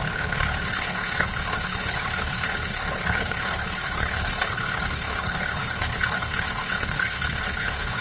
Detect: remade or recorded remade